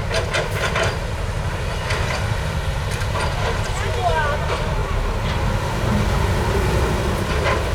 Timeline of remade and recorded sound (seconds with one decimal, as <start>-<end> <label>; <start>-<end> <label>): 0.0-7.7 recorded